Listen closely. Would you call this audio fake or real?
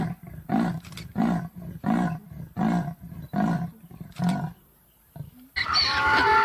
real